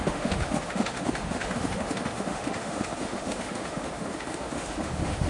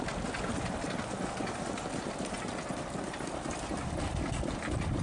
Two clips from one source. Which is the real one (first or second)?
second